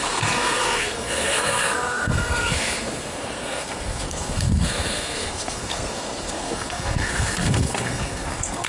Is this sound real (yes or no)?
no